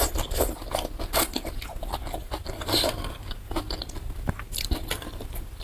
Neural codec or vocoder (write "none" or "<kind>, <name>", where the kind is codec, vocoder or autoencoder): vocoder, BigVGAN v2